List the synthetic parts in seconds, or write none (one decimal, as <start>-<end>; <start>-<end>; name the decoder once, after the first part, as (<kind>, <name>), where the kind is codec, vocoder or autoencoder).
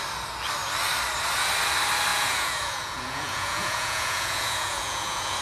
2.1-5.4 (vocoder, Vocos)